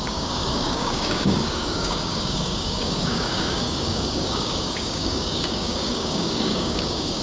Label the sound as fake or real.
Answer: fake